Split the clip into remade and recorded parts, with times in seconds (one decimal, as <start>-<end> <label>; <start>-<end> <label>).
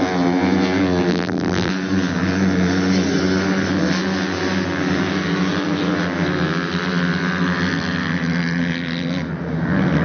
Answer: 0.0-1.1 recorded; 1.1-1.7 remade; 1.7-10.0 recorded